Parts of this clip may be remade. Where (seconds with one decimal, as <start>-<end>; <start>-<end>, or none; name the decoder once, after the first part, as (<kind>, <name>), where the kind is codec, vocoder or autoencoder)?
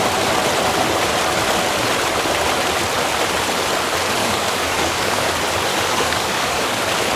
4.2-5.3 (codec, DAC); 5.7-6.8